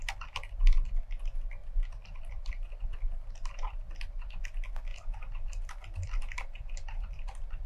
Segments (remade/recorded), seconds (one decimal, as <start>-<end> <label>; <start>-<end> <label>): 0.0-7.7 remade